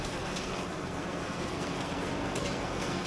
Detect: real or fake fake